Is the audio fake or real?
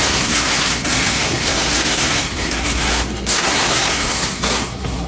fake